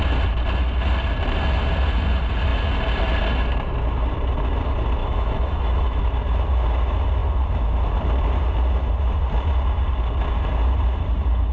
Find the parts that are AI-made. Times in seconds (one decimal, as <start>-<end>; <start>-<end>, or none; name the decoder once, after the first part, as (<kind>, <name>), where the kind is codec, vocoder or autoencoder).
5.0-6.0 (autoencoder, DAC-VAE)